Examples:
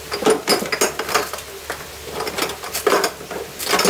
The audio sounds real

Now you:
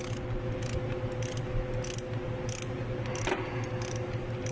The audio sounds real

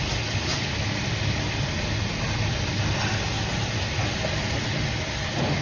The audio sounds real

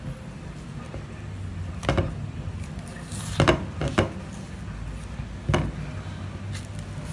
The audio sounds real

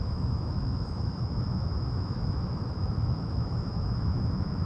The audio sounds fake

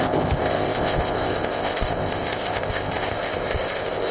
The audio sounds fake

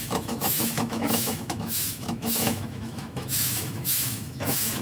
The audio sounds fake